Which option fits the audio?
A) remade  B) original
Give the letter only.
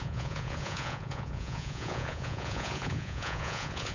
A